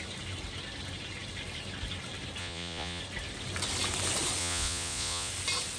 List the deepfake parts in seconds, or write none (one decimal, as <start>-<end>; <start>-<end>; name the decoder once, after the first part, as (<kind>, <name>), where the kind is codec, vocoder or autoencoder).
2.4-3.0 (vocoder, Vocos); 4.4-5.3